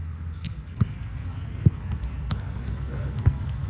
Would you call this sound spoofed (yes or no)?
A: yes